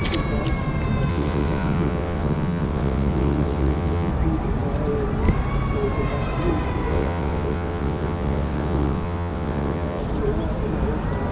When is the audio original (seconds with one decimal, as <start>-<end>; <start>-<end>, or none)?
0.0-1.1; 4.1-6.9; 10.0-11.3